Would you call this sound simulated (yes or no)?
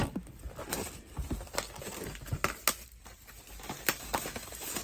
no